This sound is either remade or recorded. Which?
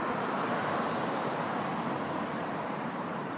remade